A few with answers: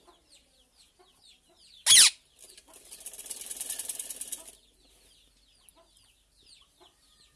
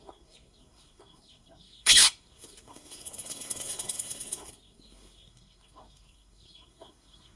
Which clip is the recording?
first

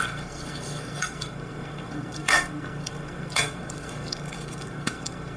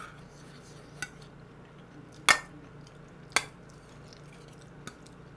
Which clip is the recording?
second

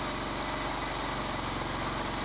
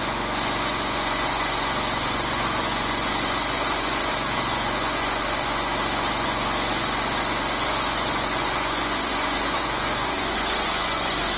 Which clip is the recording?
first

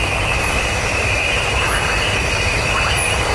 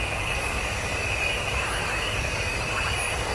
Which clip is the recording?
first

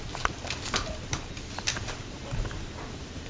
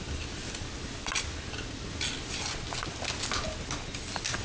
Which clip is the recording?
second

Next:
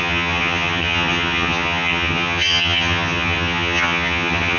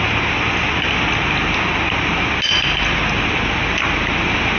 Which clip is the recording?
second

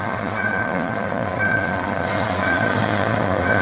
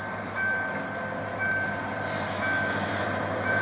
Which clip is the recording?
second